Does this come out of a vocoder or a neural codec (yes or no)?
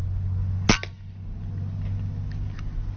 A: no